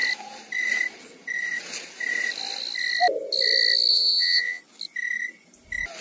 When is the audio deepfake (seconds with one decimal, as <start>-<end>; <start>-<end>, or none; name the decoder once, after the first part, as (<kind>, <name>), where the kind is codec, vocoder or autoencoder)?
3.9-4.6 (vocoder, WaveNeXt)